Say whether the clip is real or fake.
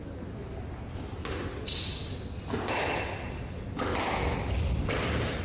real